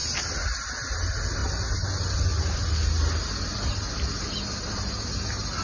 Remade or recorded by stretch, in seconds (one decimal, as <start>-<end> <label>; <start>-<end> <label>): 0.0-5.6 recorded